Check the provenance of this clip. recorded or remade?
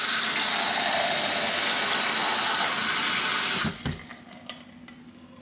recorded